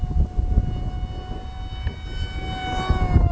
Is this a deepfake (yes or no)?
no